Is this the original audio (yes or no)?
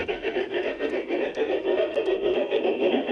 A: no